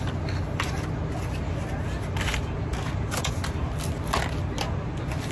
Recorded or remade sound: recorded